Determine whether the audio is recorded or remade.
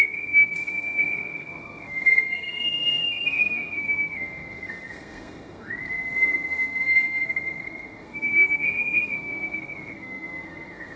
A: remade